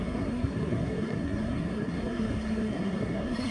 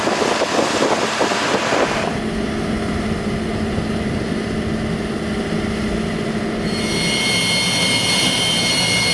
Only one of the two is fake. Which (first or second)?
first